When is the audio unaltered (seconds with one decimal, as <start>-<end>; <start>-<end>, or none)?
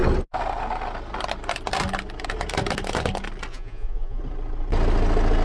0.0-3.5; 4.2-5.4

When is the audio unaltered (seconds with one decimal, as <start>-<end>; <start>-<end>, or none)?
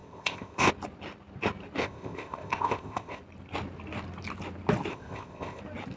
0.7-1.8; 3.2-4.9; 5.6-6.0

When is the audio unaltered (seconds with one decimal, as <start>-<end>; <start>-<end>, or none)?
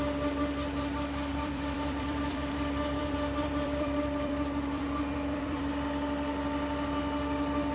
0.0-1.3; 5.6-7.7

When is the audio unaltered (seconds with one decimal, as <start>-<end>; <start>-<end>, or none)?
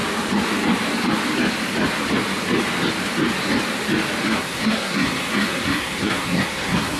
0.0-4.2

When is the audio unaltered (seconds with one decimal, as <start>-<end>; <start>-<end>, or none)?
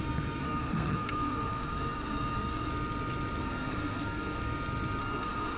0.0-0.4; 2.7-3.4; 4.4-5.0